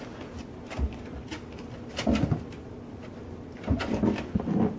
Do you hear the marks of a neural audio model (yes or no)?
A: no